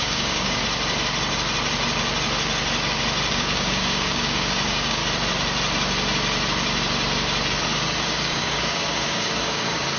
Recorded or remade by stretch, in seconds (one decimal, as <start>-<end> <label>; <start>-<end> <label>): 0.0-0.6 remade; 0.6-3.3 recorded; 3.3-5.0 remade; 5.0-8.0 recorded; 8.0-10.0 remade